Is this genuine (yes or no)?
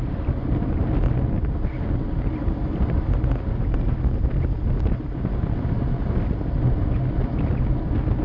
yes